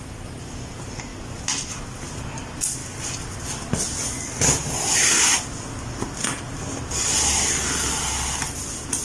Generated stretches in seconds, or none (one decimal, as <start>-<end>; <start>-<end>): none